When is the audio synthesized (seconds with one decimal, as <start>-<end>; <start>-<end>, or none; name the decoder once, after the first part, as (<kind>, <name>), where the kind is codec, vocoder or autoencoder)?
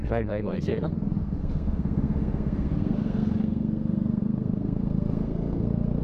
0.0-6.0 (codec, SNAC)